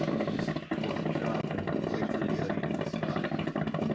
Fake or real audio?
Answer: real